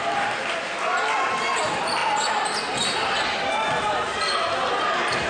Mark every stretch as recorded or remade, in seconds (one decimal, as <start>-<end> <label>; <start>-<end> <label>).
0.0-5.3 recorded